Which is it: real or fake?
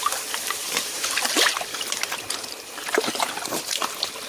fake